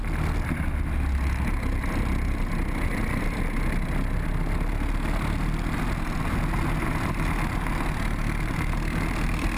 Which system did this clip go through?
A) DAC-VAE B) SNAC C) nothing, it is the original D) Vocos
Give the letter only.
C